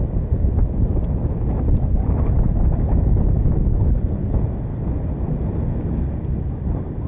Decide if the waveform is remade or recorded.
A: recorded